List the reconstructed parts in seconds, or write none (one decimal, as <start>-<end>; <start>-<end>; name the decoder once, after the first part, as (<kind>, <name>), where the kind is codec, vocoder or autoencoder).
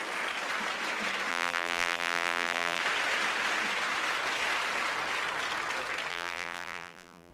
1.3-2.8 (vocoder, BigVGAN v2); 6.1-7.3